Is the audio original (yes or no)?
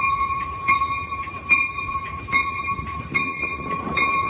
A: no